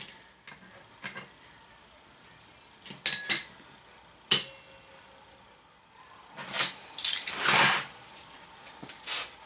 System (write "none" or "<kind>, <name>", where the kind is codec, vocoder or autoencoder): none